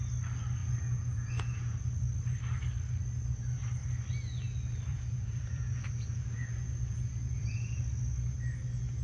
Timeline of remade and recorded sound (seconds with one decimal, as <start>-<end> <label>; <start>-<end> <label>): 0.0-0.6 recorded; 0.6-1.8 remade; 1.8-4.9 recorded; 4.9-7.8 remade; 7.8-9.0 recorded